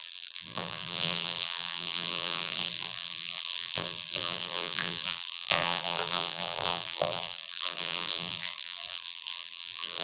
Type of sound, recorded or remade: remade